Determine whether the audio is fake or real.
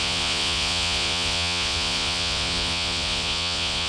fake